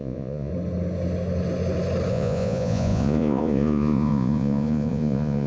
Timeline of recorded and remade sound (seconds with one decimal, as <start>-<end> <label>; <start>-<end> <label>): 0.0-0.5 remade; 0.5-2.1 recorded; 2.1-5.5 remade